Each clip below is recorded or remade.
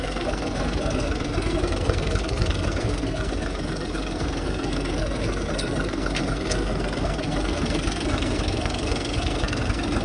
remade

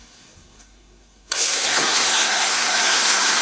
remade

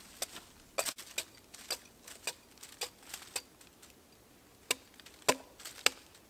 recorded